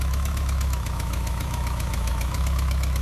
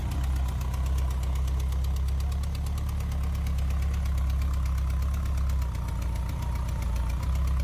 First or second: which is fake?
first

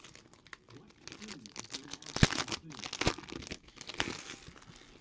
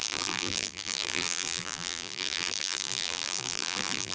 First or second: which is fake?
second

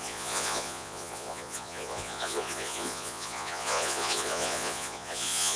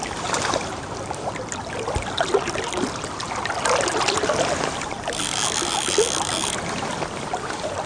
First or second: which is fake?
first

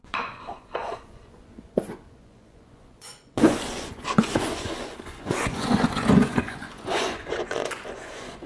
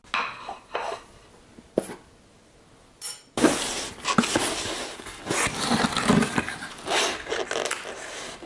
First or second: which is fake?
first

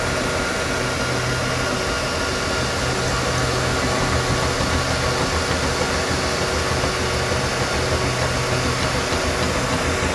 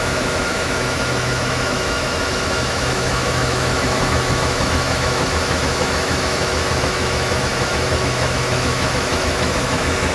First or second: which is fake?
second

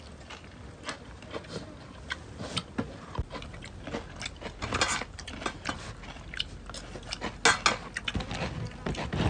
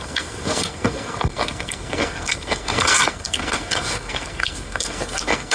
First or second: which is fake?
second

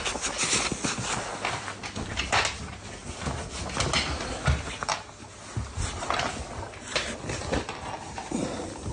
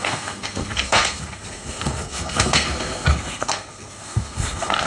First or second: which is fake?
second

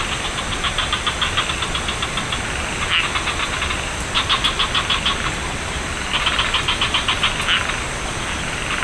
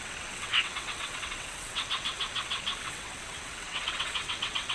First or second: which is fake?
second